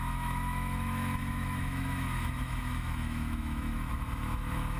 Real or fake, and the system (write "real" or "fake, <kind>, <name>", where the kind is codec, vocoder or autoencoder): fake, autoencoder, DAC-VAE